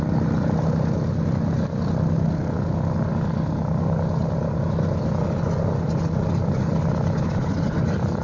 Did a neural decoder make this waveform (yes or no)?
no